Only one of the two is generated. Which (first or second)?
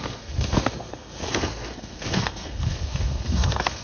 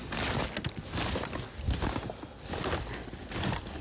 first